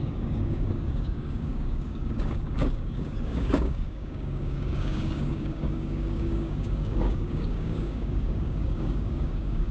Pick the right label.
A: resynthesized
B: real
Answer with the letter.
A